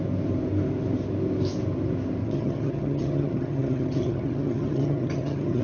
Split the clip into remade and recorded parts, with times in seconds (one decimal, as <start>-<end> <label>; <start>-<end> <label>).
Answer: 0.0-2.2 recorded; 2.2-5.6 remade